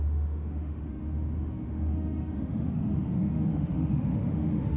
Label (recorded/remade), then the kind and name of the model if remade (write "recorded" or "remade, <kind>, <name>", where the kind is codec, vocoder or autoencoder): remade, autoencoder, DAC-VAE